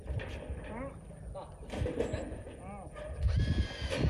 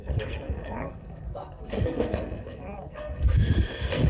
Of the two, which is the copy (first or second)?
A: second